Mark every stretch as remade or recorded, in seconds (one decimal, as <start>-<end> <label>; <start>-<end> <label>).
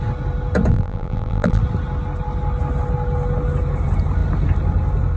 0.0-0.7 recorded; 0.7-1.6 remade; 1.6-5.2 recorded